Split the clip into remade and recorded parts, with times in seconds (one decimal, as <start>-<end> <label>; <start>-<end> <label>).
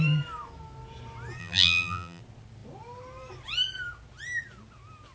0.0-1.4 recorded; 1.4-2.2 remade; 2.2-5.1 recorded